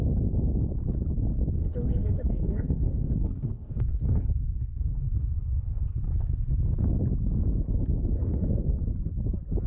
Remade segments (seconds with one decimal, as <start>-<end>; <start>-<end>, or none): 1.6-6.0; 7.7-8.8